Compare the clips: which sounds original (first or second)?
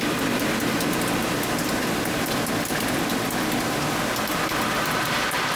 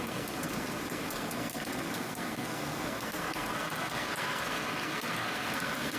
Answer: first